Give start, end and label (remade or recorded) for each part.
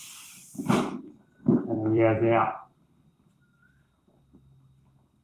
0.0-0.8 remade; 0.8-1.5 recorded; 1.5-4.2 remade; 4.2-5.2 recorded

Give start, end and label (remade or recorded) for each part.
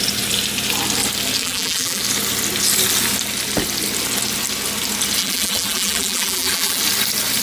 0.0-1.4 recorded; 1.4-2.0 remade; 2.0-5.2 recorded; 5.2-6.8 remade; 6.8-7.4 recorded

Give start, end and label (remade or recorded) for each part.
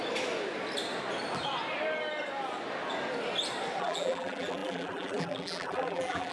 0.0-3.8 recorded; 3.8-6.3 remade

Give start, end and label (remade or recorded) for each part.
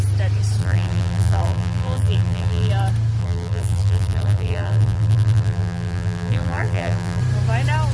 0.0-0.6 recorded; 0.6-2.7 remade; 2.7-3.2 recorded; 3.2-7.2 remade; 7.2-7.9 recorded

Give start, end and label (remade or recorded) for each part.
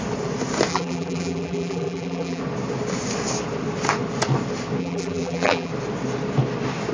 0.0-0.7 recorded; 0.7-2.4 remade; 2.4-4.8 recorded; 4.8-5.7 remade; 5.7-6.9 recorded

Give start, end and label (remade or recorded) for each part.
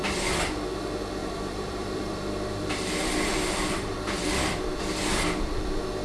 0.0-1.2 recorded; 1.2-4.8 remade; 4.8-6.0 recorded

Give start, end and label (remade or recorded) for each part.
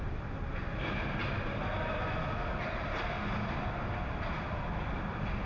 0.0-5.5 recorded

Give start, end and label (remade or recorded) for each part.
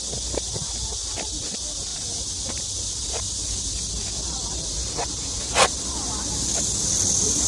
0.0-1.9 recorded; 1.9-3.9 remade; 3.9-4.8 recorded; 4.8-5.5 remade; 5.5-7.5 recorded